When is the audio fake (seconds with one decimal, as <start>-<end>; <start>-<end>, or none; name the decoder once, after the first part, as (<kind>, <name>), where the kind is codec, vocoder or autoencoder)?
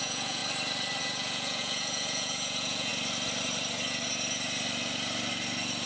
0.0-0.4 (vocoder, Vocos); 1.0-2.9